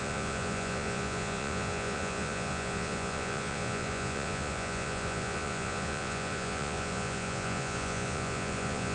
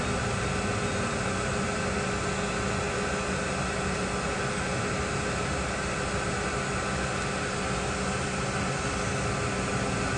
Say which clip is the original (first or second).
second